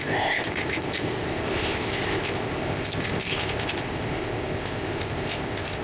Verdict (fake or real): fake